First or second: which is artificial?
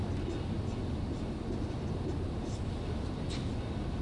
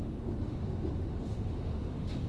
second